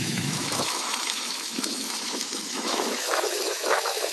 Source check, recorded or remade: remade